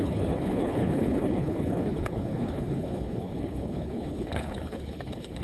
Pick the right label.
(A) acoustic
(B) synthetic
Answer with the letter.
B